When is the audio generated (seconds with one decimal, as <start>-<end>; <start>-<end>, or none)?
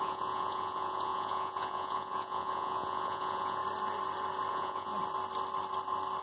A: 0.0-3.6; 4.5-4.9